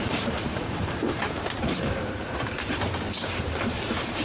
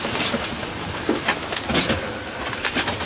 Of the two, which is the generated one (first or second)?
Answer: first